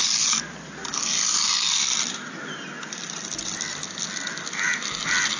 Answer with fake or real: real